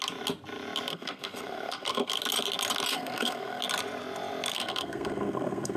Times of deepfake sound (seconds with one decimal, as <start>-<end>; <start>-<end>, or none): 0.9-2.1; 2.9-3.6; 4.5-5.8